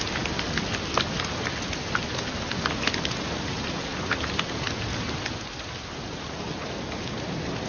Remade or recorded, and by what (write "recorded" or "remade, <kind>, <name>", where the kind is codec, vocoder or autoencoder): recorded